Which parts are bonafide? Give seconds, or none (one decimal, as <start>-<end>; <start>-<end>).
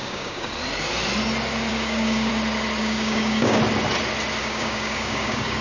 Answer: 0.5-1.7; 2.3-2.8; 3.6-4.4